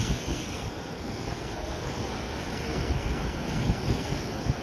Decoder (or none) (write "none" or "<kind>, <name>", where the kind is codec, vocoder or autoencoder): codec, SNAC